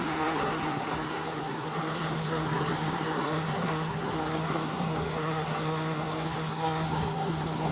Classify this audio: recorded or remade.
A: remade